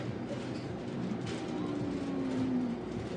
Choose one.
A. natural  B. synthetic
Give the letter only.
A